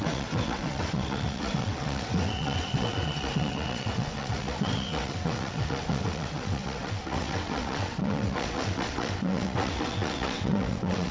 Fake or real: fake